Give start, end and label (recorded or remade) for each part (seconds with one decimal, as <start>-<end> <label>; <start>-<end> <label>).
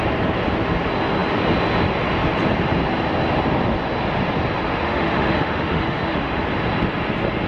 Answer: 0.0-4.7 recorded; 4.7-6.4 remade; 6.4-7.5 recorded